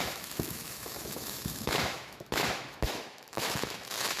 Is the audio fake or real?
fake